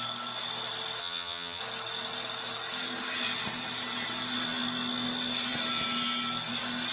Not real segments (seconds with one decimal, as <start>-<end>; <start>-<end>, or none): 1.0-1.6